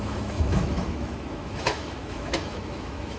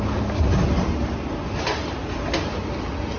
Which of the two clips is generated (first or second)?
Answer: first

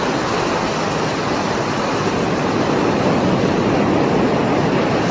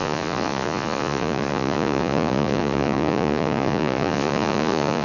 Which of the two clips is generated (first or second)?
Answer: second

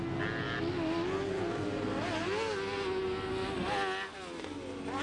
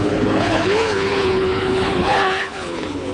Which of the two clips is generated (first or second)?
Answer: second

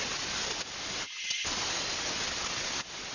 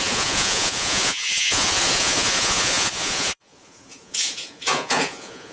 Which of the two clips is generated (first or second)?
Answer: second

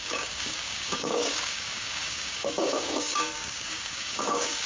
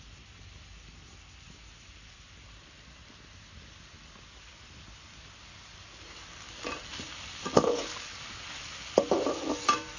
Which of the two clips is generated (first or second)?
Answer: first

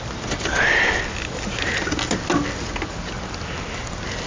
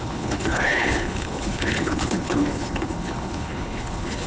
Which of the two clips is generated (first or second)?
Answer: second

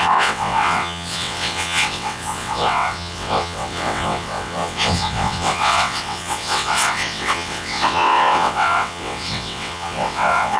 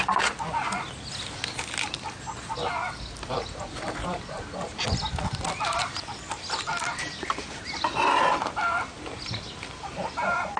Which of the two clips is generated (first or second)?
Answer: first